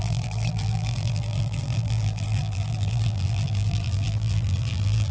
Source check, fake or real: fake